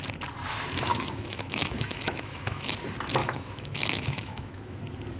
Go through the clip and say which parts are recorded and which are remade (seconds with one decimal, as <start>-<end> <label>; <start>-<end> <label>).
0.0-0.9 recorded; 0.9-2.7 remade; 2.7-3.2 recorded; 3.2-4.8 remade; 4.8-5.2 recorded